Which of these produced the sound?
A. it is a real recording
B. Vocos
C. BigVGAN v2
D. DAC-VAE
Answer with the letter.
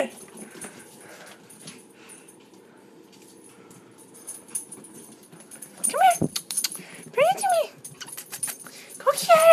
C